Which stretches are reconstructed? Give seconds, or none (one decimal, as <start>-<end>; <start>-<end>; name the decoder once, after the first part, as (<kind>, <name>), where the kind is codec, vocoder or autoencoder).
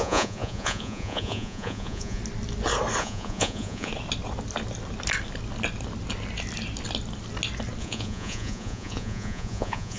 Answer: 0.0-2.2 (vocoder, Vocos); 3.0-3.9; 7.8-10.0